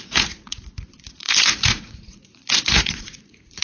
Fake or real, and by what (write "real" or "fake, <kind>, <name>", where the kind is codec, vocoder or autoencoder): fake, vocoder, Vocos